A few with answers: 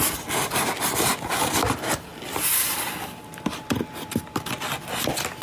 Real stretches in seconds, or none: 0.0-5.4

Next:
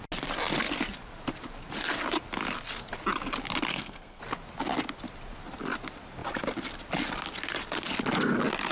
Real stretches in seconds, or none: 0.0-3.7; 4.2-8.7

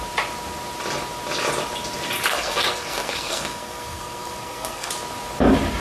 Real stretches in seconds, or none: 0.0-2.3; 4.9-5.8